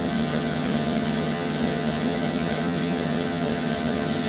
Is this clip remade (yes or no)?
yes